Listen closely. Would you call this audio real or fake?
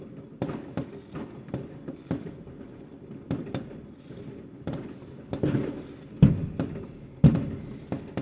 real